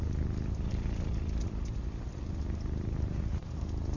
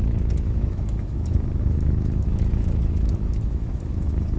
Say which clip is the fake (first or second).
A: second